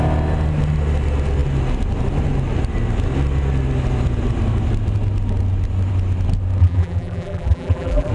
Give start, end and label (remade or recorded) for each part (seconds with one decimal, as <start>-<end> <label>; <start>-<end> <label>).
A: 0.0-6.6 recorded; 6.6-8.1 remade